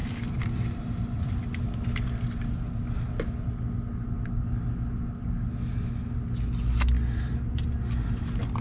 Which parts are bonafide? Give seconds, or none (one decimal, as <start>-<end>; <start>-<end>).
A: 1.4-8.6